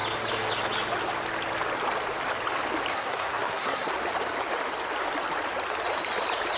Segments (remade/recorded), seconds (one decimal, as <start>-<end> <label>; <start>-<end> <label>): 0.0-2.9 recorded; 2.9-3.9 remade; 3.9-6.6 recorded